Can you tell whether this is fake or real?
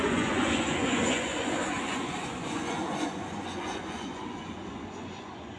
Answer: fake